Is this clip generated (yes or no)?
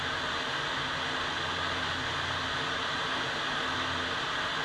no